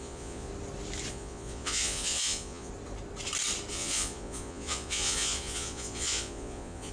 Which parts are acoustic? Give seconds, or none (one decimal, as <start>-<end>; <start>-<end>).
0.5-1.1; 2.7-3.7